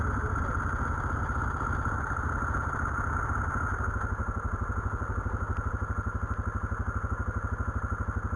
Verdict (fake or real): real